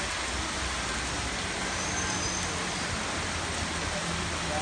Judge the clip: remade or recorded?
recorded